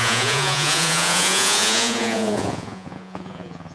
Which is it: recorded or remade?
remade